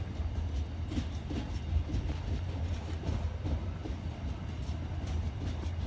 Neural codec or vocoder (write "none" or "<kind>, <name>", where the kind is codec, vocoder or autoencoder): none